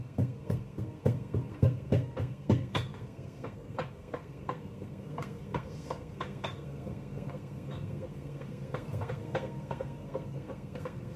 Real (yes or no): no